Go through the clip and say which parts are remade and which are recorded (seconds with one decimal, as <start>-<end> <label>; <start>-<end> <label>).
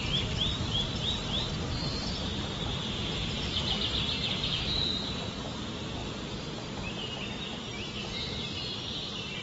0.0-2.3 remade; 2.3-3.0 recorded; 3.0-6.0 remade; 6.0-7.2 recorded; 7.2-7.7 remade; 7.7-9.0 recorded; 9.0-9.4 remade